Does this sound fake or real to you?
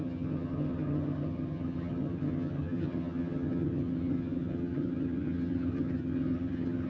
fake